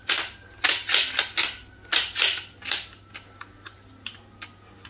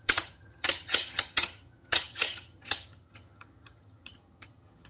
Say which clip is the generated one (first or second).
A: second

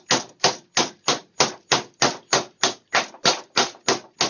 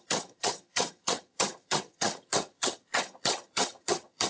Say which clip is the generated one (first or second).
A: second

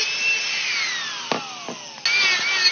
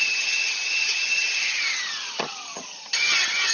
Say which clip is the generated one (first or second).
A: second